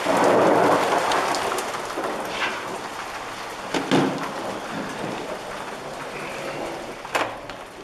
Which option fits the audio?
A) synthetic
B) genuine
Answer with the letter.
B